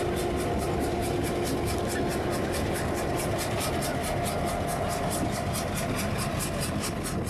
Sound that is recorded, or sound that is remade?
recorded